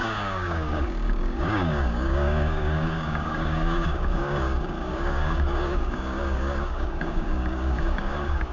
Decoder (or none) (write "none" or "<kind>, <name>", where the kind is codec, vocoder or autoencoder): codec, DAC